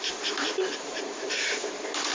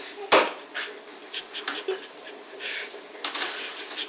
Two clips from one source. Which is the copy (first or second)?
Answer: first